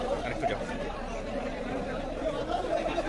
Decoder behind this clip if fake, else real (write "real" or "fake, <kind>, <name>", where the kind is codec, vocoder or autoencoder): fake, vocoder, BigVGAN v2